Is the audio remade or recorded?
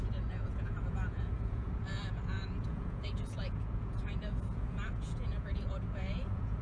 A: remade